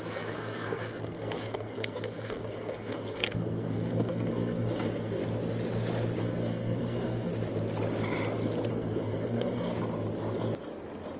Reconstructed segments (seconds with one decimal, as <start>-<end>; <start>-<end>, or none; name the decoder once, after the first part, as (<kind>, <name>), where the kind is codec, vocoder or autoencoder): 0.0-5.2 (codec, SNAC); 6.2-7.3; 8.7-9.7